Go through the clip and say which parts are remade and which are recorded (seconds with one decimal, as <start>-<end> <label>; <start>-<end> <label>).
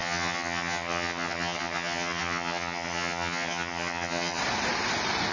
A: 0.0-4.4 remade; 4.4-5.3 recorded